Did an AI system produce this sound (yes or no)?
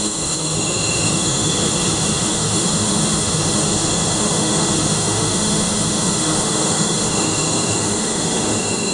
yes